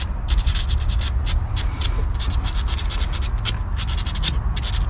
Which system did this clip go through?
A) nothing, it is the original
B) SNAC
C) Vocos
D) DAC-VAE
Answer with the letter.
A